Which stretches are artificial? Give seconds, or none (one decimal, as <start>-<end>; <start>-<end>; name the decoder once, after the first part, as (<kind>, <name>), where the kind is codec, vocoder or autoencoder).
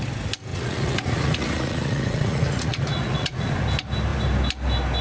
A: 0.5-3.5 (vocoder, Vocos)